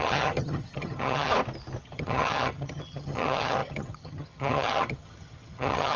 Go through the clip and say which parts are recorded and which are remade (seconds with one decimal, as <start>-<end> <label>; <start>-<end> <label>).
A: 0.0-1.3 remade; 1.3-1.8 recorded; 1.8-6.0 remade